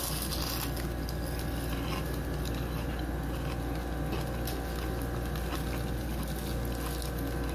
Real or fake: real